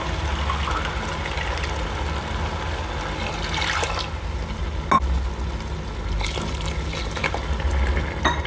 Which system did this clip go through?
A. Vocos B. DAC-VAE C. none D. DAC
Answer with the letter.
C